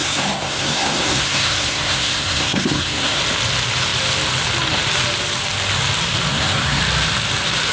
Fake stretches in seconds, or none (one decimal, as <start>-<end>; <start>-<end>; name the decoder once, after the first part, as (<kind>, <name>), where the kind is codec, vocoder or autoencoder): 0.0-3.2 (codec, SNAC); 6.3-6.8